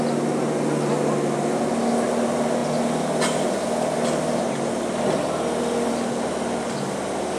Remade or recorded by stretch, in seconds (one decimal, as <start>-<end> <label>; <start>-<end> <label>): 0.0-7.4 recorded